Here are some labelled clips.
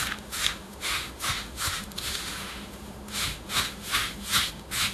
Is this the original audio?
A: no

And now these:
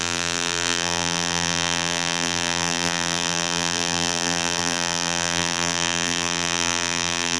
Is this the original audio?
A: no